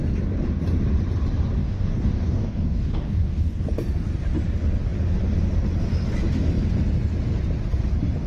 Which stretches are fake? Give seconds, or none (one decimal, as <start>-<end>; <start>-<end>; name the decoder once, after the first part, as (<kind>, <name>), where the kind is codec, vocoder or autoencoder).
1.6-3.6 (codec, DAC)